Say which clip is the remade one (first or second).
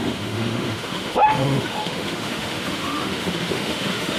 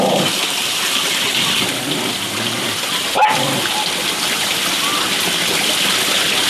first